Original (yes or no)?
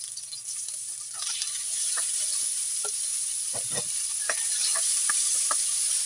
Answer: yes